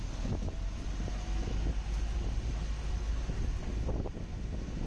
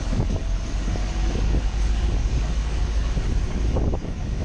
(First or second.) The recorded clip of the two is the first